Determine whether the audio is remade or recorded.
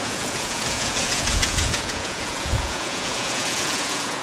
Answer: remade